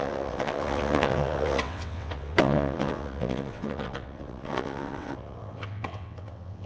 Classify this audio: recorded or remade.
remade